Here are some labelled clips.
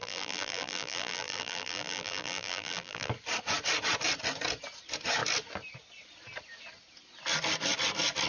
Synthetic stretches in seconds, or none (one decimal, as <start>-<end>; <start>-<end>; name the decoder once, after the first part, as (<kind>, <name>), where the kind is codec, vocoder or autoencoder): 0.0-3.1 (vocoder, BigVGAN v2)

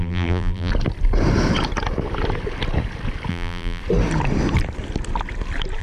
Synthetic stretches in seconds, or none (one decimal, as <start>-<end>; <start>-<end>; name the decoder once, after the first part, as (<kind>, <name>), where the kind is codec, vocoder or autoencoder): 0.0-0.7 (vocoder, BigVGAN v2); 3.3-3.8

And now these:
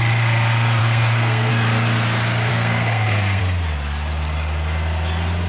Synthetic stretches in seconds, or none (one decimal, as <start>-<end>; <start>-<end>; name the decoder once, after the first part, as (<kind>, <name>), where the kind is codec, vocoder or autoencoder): 0.8-1.5 (codec, SNAC); 2.5-3.4

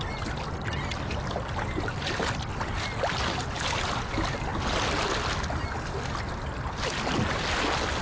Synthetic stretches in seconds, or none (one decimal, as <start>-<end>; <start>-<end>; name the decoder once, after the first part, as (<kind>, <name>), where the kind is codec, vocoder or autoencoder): none